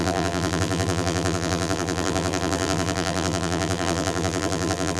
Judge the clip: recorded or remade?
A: remade